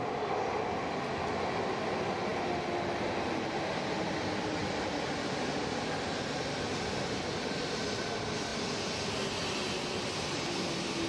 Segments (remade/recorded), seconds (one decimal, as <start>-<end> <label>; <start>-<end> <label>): 0.0-4.6 recorded; 4.6-6.4 remade; 6.4-11.1 recorded